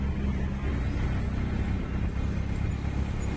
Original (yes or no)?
yes